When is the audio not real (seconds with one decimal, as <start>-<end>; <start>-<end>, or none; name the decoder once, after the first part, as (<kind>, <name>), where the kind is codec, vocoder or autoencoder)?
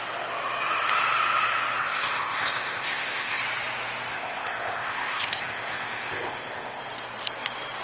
1.8-3.4 (codec, ZipCodec); 4.1-6.8